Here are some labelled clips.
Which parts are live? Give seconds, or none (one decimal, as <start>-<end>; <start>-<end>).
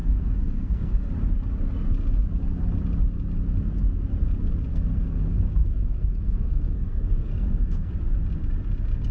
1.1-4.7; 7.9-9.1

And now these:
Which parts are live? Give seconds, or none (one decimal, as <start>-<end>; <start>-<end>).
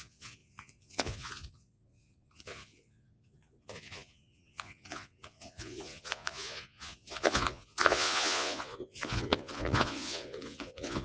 none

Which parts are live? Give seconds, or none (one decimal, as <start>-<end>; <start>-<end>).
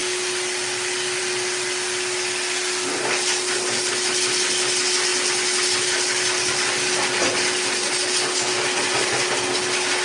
0.0-10.0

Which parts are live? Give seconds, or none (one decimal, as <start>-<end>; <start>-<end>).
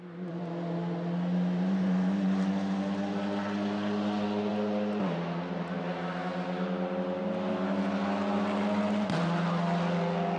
0.0-10.4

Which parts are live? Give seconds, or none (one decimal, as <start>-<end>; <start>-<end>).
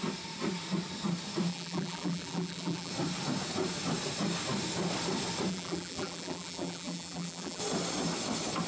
0.0-1.5; 2.9-5.5; 7.6-8.7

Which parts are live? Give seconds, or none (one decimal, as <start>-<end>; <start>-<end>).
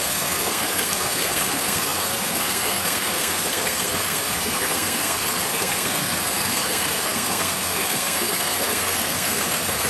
none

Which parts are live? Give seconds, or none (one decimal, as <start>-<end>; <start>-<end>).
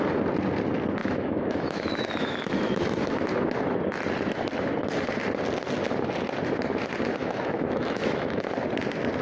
0.0-1.0; 2.9-7.2; 8.4-9.2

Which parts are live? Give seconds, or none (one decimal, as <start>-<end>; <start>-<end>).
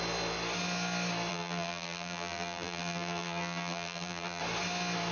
0.0-1.3; 4.4-5.1